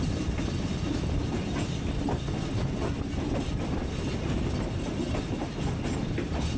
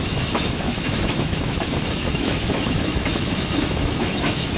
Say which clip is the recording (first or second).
first